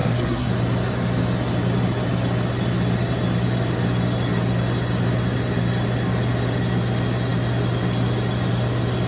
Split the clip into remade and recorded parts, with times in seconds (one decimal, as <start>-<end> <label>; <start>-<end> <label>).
0.0-0.5 remade; 0.5-9.1 recorded